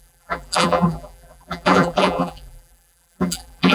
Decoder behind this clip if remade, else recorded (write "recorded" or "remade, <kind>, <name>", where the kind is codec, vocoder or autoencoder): remade, vocoder, BigVGAN v2